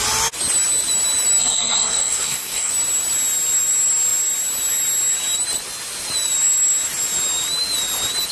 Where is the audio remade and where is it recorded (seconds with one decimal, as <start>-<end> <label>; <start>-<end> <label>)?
0.0-1.4 recorded; 1.4-2.7 remade; 2.7-8.3 recorded